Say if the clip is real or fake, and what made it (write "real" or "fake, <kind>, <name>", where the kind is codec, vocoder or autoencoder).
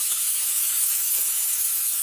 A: fake, autoencoder, DAC-VAE